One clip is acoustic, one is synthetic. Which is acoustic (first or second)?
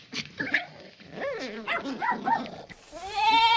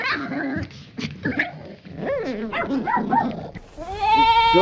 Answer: second